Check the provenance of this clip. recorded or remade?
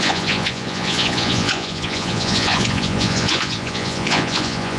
remade